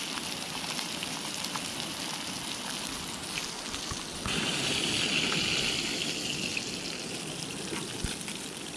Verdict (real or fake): real